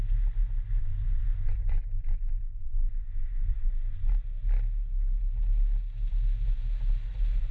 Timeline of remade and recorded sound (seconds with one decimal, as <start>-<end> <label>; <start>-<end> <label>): 0.0-0.8 recorded; 0.8-4.1 remade; 4.1-7.5 recorded